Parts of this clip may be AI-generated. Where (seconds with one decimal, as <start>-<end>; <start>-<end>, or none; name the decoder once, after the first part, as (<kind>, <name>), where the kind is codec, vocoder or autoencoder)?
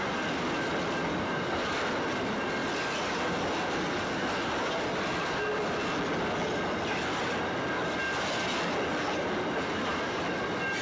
none